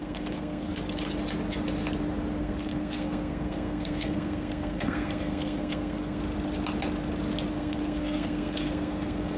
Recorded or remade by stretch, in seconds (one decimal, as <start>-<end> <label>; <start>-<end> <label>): 0.0-0.7 remade; 0.7-2.4 recorded; 2.4-6.2 remade; 6.2-7.5 recorded; 7.5-9.4 remade